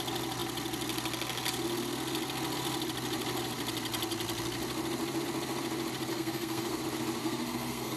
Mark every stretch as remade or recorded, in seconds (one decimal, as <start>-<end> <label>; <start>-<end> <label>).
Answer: 0.0-6.1 recorded; 6.1-6.8 remade; 6.8-7.2 recorded; 7.2-8.0 remade